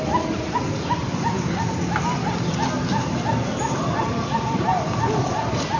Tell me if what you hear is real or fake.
real